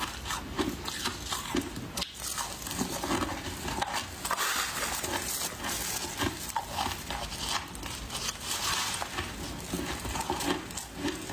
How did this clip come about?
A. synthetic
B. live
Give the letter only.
B